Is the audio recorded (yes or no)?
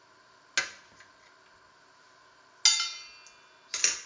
yes